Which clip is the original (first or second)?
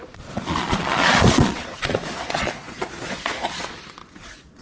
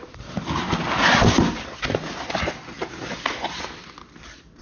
second